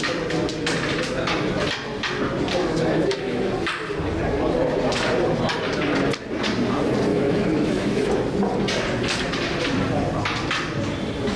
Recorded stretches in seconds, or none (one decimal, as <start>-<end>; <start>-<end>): 0.0-2.6; 3.5-7.1; 8.1-11.4